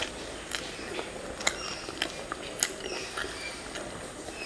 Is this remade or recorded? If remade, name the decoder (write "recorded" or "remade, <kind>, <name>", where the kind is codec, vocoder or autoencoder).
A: recorded